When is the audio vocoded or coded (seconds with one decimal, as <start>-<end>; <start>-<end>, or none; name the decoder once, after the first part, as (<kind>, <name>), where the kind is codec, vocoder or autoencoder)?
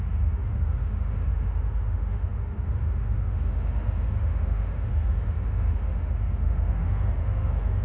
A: 0.0-7.8 (autoencoder, DAC-VAE)